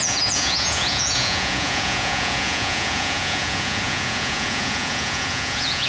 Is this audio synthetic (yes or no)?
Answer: yes